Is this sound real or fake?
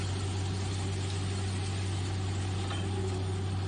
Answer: real